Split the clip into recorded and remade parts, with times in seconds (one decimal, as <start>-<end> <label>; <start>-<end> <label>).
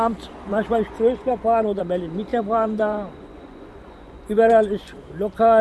0.0-0.5 recorded; 0.5-1.8 remade; 1.8-2.3 recorded; 2.3-5.0 remade; 5.0-5.6 recorded